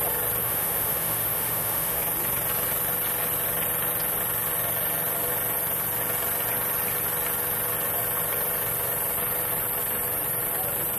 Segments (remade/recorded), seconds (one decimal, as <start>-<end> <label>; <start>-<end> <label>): 0.0-0.4 recorded; 0.4-2.0 remade; 2.0-11.0 recorded